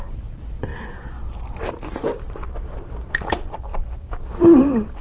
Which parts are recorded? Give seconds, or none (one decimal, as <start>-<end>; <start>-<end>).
2.4-3.1